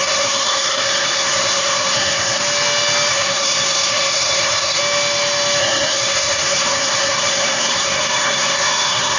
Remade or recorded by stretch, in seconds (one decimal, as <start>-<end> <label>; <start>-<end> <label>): 0.0-2.4 remade; 2.4-3.1 recorded; 3.1-4.8 remade; 4.8-5.6 recorded; 5.6-9.2 remade